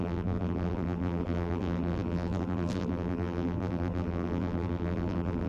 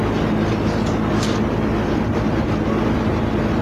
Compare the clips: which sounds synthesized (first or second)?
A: first